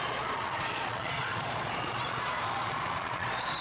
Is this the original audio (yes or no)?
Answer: no